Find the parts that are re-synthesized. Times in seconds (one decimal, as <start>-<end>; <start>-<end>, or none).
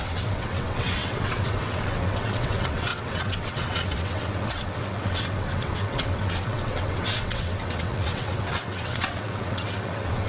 0.0-10.3